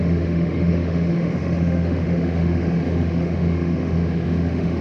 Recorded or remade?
remade